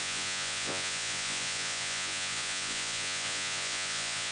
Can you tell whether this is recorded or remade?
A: remade